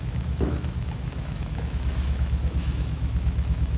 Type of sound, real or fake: fake